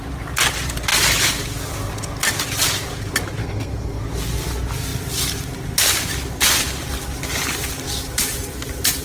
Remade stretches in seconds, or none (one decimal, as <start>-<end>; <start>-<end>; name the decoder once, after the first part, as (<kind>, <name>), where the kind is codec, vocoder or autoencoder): 3.4-4.0 (codec, SNAC)